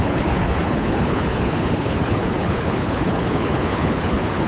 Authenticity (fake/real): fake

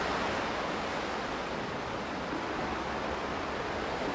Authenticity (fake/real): real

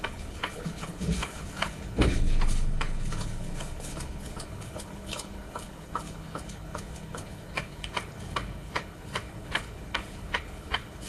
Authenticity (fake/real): fake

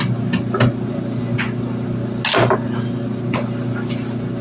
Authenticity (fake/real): real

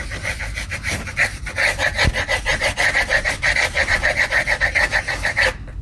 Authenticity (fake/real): real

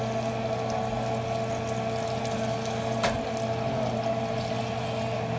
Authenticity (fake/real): real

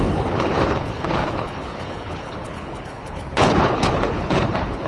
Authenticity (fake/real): fake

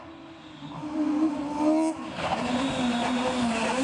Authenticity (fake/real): real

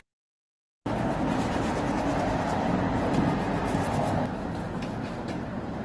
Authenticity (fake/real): real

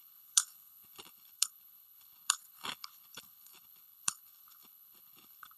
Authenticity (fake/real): fake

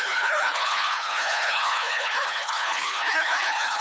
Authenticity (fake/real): fake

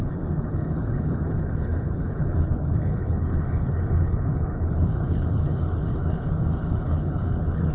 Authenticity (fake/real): fake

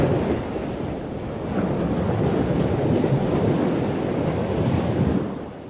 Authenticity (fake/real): real